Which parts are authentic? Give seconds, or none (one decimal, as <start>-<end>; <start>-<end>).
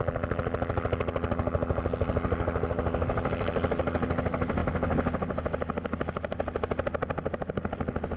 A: 0.0-8.2